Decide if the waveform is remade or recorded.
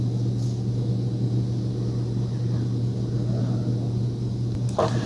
recorded